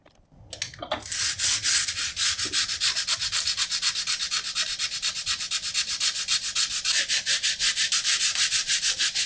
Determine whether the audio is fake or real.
real